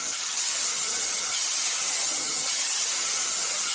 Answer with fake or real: fake